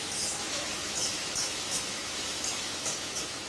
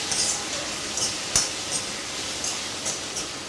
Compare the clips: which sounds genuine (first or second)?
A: second